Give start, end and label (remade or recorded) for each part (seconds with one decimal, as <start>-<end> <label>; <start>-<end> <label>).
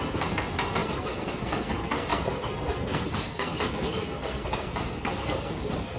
0.0-6.0 remade